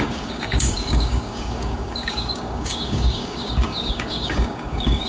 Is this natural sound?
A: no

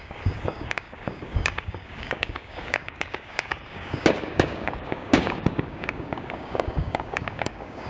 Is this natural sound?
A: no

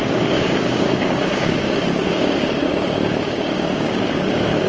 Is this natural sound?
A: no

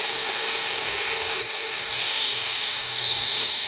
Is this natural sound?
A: no